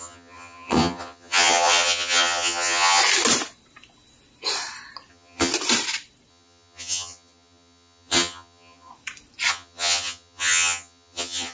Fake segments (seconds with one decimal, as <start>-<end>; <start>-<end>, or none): 0.0-3.0; 5.1-5.5; 6.3-8.9; 9.5-11.5